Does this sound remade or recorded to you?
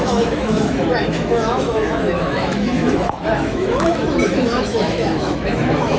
remade